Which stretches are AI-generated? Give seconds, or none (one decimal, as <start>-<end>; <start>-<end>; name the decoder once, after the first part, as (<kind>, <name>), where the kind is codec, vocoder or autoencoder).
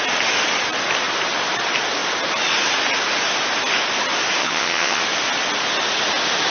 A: 4.4-5.0 (vocoder, HiFi-GAN)